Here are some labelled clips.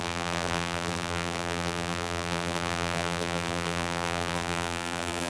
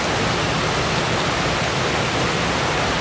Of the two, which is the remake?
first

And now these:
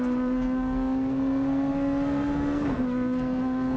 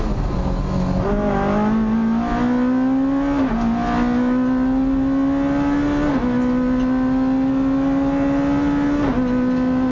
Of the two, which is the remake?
first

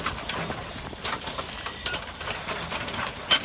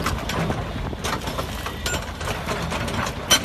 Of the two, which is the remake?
first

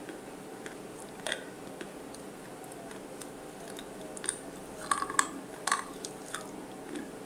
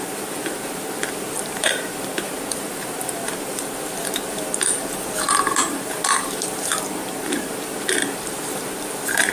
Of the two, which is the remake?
second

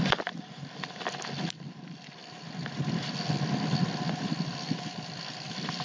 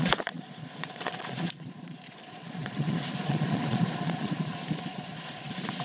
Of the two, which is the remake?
second